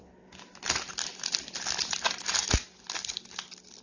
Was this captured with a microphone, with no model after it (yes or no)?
yes